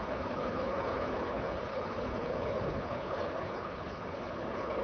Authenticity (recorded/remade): remade